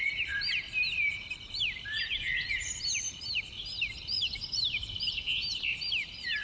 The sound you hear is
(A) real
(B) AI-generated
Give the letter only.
B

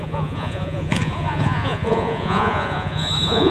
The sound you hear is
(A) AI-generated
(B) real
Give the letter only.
A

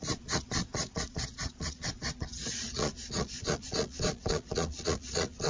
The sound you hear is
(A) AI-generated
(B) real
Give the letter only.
A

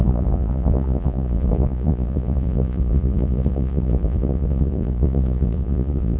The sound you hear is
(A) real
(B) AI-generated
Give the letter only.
B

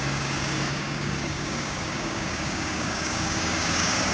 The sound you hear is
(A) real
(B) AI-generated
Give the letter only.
B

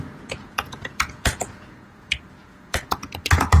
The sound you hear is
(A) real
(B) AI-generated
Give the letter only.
B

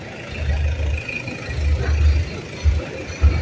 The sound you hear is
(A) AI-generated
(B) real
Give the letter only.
B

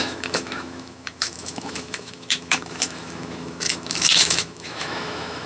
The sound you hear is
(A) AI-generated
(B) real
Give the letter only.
A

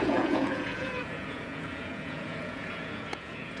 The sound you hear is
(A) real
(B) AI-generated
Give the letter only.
B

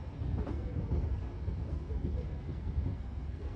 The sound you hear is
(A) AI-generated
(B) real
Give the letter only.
A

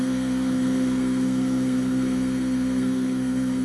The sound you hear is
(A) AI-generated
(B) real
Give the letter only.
A